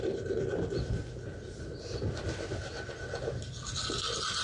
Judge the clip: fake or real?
real